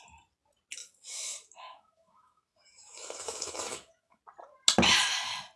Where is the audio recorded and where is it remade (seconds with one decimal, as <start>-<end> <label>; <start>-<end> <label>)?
0.0-0.8 recorded; 0.8-4.2 remade; 4.2-5.6 recorded